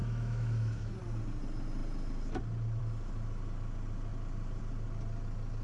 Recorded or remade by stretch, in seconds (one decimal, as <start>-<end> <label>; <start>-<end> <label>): 0.0-0.9 remade; 0.9-5.6 recorded